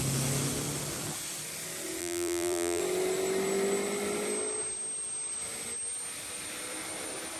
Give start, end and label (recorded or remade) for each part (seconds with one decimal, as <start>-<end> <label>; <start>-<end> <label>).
0.0-2.0 recorded; 2.0-2.8 remade; 2.8-7.4 recorded